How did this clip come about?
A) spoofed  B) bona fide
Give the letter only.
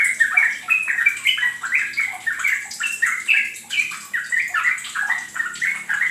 B